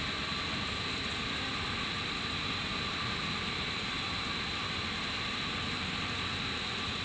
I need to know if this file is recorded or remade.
recorded